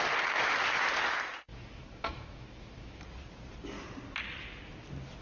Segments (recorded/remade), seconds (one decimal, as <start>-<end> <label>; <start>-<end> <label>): 0.0-1.5 recorded; 1.5-3.0 remade; 3.0-5.2 recorded